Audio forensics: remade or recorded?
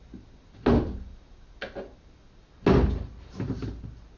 recorded